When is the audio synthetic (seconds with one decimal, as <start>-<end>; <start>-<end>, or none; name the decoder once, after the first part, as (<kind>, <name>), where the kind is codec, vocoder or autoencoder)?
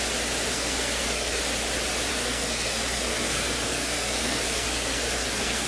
0.5-1.4 (codec, SNAC); 2.1-5.7